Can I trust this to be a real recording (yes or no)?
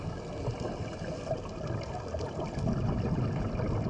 yes